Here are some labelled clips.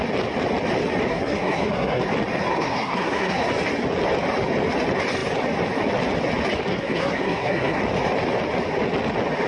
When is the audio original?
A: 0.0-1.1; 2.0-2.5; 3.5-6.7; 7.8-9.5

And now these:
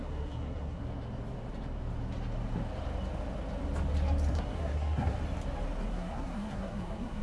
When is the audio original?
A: 0.8-4.3; 5.2-5.9

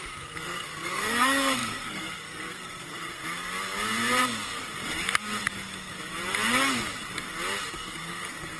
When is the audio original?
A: 3.2-7.7